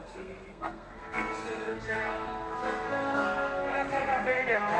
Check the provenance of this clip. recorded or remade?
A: remade